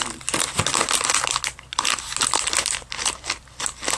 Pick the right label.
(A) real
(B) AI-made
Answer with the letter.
A